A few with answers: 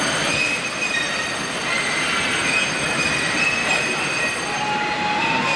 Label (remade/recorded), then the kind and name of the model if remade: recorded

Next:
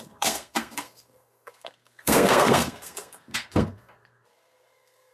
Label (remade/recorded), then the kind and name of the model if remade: remade, codec, SNAC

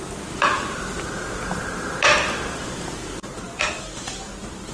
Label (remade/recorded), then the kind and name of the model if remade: recorded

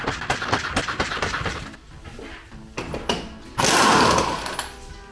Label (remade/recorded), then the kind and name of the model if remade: recorded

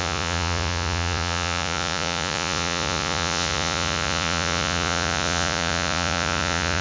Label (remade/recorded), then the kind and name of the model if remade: remade, vocoder, Vocos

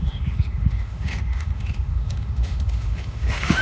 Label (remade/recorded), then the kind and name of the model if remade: remade, autoencoder, DAC-VAE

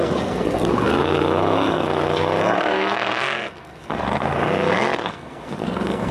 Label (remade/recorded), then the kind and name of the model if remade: remade, codec, SNAC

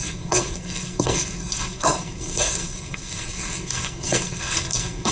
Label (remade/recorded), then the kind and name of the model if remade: remade, codec, SNAC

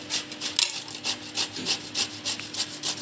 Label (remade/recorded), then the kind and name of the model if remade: recorded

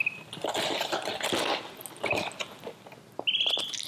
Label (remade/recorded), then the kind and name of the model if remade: recorded